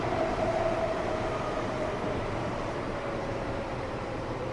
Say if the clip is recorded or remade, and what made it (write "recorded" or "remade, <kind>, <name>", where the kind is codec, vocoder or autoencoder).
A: remade, vocoder, BigVGAN v2